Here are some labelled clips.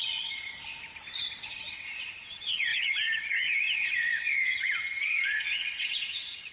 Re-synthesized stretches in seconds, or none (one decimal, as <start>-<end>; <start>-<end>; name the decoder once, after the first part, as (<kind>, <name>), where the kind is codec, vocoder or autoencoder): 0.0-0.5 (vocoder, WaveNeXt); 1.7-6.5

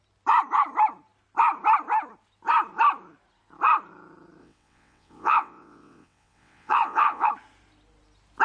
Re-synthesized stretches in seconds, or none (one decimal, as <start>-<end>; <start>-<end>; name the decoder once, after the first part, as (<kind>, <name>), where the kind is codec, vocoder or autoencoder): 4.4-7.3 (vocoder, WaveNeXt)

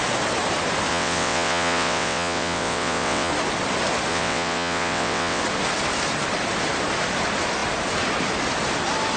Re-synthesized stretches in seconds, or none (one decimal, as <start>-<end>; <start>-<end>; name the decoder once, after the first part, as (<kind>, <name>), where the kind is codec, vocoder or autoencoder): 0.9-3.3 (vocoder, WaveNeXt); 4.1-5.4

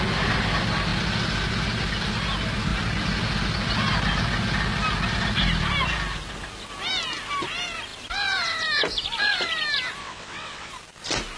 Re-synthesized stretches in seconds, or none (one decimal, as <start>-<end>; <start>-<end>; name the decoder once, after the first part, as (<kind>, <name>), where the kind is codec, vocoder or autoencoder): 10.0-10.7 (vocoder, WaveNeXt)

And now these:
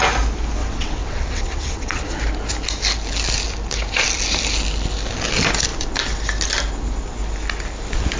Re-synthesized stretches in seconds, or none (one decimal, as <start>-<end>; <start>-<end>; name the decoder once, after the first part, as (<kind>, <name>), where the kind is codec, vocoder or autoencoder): 0.6-2.2 (vocoder, WaveNeXt)

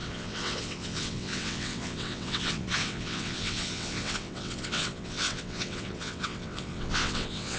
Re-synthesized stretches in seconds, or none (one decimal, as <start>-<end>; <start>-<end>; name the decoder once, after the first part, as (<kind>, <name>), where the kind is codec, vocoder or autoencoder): 0.0-7.6 (vocoder, WaveNeXt)